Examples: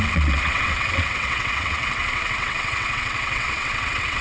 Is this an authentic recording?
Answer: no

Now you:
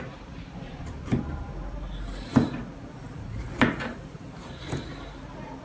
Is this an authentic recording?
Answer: yes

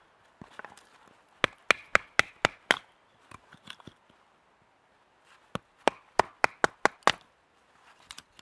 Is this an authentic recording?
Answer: yes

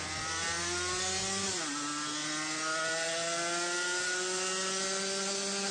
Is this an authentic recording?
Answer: yes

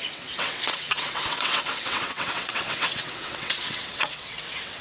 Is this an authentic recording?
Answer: no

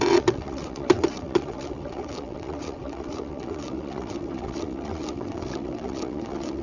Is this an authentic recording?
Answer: no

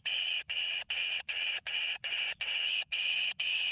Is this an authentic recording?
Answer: no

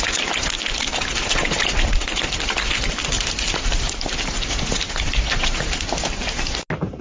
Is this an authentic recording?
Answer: yes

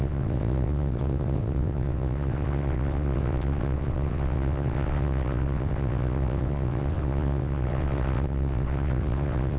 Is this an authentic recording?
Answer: no